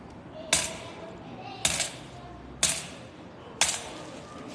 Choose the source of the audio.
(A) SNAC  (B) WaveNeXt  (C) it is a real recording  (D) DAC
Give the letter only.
C